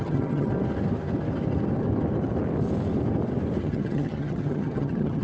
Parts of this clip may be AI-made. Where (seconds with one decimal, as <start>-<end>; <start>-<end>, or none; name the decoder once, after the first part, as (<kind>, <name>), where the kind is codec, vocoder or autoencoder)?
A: 0.0-0.5 (vocoder, HiFi-GAN); 3.6-5.2

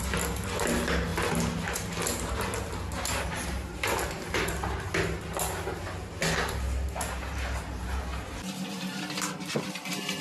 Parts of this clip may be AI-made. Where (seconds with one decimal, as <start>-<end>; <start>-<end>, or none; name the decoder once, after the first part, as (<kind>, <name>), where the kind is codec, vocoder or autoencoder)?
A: none

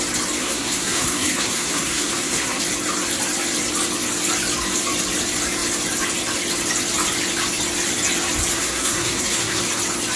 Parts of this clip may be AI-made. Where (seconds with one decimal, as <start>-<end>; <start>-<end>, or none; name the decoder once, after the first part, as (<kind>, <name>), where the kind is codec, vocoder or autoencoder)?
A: 0.4-2.6 (codec, SNAC); 8.5-9.6

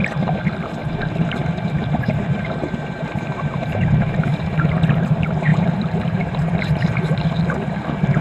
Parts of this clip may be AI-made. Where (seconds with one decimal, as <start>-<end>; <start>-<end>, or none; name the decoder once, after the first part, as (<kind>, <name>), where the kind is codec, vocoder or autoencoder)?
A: 0.8-4.6 (vocoder, BigVGAN v2); 5.5-7.4

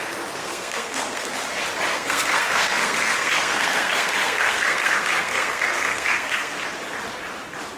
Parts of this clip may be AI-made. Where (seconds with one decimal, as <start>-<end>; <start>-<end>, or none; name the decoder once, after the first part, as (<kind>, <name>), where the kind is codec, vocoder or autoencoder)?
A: 0.4-1.3 (codec, SNAC); 1.9-6.6